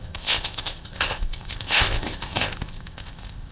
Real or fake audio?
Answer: fake